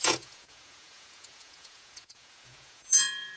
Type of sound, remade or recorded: remade